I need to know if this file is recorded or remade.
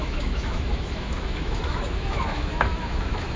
remade